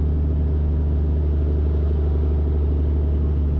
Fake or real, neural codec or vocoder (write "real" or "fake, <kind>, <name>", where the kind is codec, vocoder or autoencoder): real